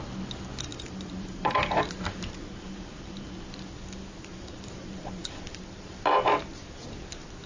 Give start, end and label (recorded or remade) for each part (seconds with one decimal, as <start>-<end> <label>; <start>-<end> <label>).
0.0-0.7 recorded; 0.7-3.4 remade; 3.4-4.3 recorded; 4.3-6.0 remade; 6.0-7.5 recorded